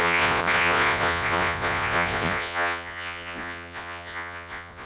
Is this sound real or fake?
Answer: fake